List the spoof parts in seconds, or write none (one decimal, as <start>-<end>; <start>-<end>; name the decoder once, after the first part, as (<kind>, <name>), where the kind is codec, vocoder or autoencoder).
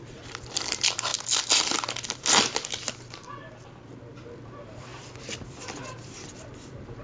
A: 0.0-1.1 (vocoder, BigVGAN v2); 2.9-7.0